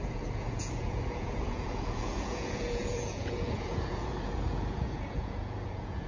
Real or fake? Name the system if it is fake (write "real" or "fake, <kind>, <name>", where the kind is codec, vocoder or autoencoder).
fake, vocoder, Vocos